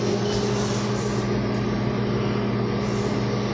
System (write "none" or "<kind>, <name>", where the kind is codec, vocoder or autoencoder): none